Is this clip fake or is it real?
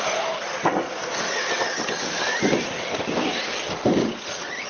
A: real